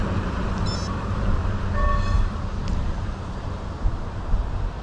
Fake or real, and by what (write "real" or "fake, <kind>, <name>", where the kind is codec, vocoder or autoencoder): fake, vocoder, BigVGAN v2